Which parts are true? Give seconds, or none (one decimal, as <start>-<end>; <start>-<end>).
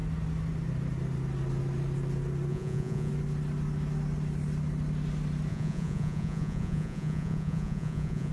0.0-2.5; 3.1-5.5